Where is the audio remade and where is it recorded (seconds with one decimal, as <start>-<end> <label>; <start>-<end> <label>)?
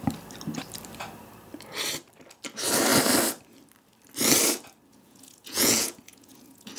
0.0-4.9 recorded; 4.9-6.8 remade